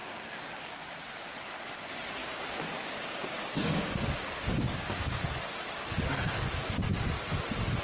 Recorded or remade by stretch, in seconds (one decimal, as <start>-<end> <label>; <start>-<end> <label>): 0.0-0.8 remade; 0.8-2.2 recorded; 2.2-5.2 remade; 5.2-7.8 recorded